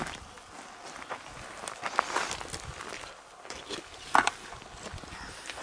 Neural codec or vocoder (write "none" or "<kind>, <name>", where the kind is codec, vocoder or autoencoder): none